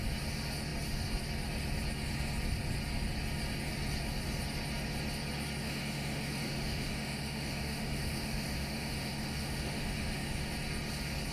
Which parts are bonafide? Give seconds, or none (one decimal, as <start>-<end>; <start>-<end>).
0.0-5.6; 10.5-11.3